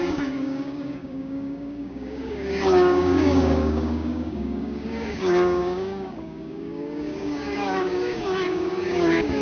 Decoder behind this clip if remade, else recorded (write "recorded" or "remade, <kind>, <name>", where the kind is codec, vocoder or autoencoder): remade, codec, DAC